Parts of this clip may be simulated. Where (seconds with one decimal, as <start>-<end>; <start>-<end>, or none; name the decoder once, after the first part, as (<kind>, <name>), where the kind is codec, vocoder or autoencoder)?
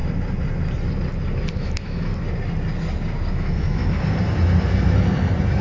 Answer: 1.5-2.1 (autoencoder, DAC-VAE); 3.3-3.8